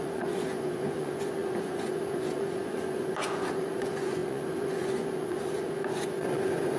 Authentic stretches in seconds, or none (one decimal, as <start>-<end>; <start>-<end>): none